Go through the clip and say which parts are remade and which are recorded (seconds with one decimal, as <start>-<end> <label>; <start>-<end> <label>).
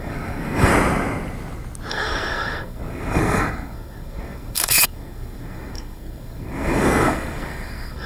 0.0-0.7 remade; 0.7-1.9 recorded; 1.9-8.1 remade